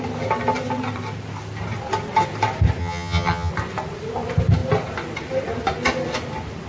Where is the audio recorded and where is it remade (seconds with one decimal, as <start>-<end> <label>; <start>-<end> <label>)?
0.0-2.8 recorded; 2.8-3.5 remade; 3.5-6.7 recorded